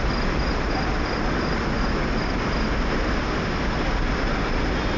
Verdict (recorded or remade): recorded